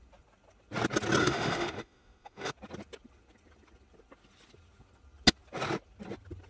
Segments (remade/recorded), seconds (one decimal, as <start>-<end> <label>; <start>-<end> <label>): 0.0-1.2 recorded; 1.2-2.5 remade; 2.5-6.5 recorded